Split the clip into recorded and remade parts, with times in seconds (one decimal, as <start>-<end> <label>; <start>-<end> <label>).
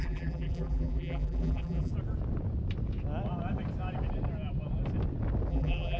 0.0-1.9 remade; 1.9-5.5 recorded; 5.5-6.0 remade